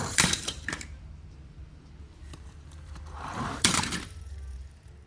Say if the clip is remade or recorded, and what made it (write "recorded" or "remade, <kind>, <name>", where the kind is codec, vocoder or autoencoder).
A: remade, vocoder, BigVGAN v2